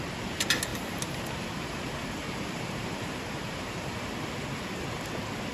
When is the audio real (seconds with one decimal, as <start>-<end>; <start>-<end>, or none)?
0.0-0.7; 3.9-5.5